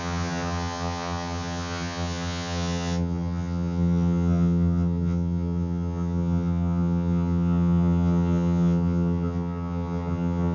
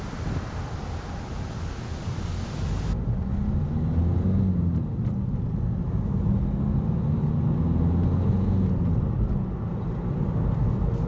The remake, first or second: first